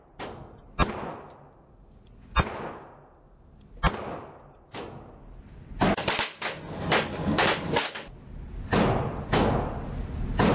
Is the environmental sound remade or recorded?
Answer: recorded